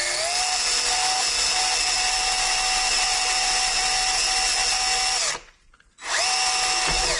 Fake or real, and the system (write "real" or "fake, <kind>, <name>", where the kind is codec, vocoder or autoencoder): real